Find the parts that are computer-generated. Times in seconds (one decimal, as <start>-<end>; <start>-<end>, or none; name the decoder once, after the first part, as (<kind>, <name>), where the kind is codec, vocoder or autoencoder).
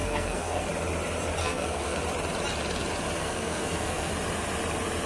0.0-0.7 (codec, SNAC); 1.4-2.0; 3.2-4.1